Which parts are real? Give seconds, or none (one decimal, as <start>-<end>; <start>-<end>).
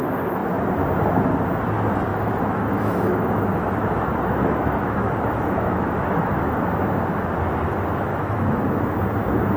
0.0-2.1; 6.6-8.1; 8.6-9.6